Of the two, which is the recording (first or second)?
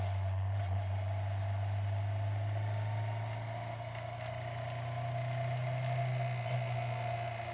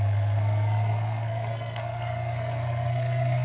first